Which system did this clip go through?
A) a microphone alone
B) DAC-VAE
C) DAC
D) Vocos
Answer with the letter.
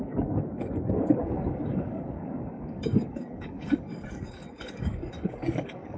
C